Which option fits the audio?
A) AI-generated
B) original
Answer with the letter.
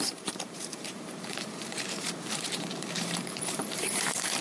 A